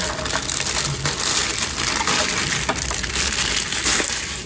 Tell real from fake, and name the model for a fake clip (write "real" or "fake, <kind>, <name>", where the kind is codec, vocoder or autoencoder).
real